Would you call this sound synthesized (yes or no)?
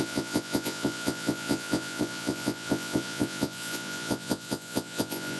yes